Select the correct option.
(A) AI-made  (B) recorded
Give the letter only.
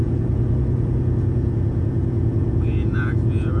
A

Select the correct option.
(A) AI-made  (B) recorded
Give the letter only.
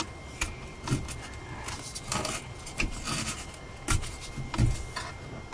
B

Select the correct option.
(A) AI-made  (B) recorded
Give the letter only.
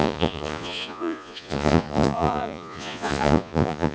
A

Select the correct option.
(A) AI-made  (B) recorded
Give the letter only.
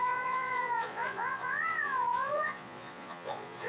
A